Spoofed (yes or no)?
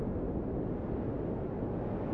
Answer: no